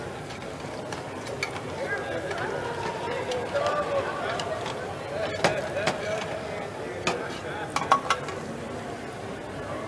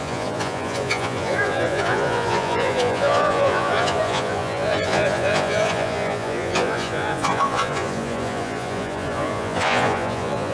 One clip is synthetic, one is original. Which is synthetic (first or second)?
second